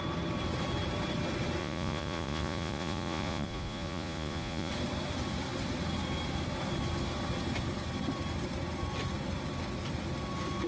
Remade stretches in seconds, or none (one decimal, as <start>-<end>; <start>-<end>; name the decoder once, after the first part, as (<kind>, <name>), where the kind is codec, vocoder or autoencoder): 1.6-4.7 (vocoder, Vocos)